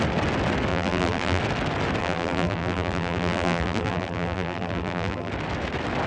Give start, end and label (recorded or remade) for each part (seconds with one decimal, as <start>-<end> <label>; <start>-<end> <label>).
0.0-0.7 recorded; 0.7-1.4 remade; 1.4-2.0 recorded; 2.0-5.3 remade; 5.3-6.1 recorded